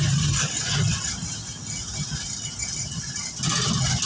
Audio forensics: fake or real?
real